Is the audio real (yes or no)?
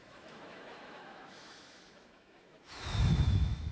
no